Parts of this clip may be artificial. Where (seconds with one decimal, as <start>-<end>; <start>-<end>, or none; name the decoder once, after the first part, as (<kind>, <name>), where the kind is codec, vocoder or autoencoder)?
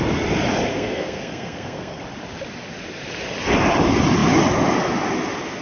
0.7-2.0 (codec, SNAC)